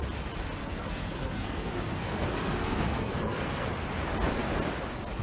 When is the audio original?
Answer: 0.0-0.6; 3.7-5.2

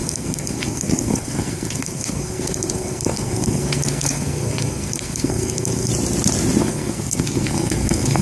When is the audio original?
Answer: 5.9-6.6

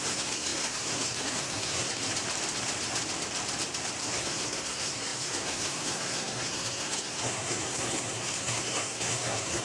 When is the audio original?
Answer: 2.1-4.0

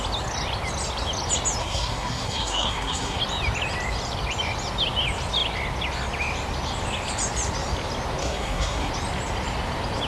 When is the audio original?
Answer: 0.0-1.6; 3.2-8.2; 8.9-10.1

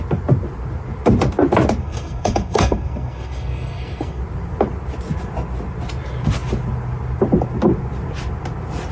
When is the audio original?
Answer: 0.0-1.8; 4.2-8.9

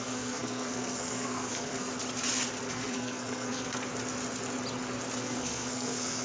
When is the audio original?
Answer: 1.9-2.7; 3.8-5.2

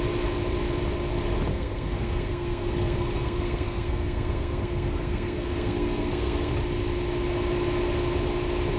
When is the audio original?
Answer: 0.0-1.5; 6.5-8.8

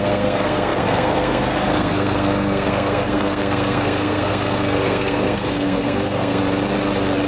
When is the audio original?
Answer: 6.4-7.3